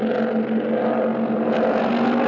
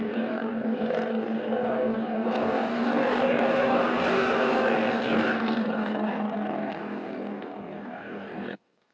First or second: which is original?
first